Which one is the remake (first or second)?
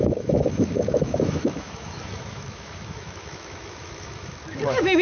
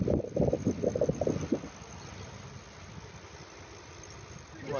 first